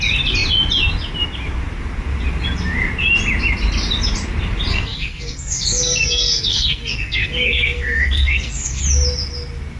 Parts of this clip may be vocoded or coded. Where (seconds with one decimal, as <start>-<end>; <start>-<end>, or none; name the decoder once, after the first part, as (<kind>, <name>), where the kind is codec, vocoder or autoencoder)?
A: 4.7-8.8 (codec, SNAC)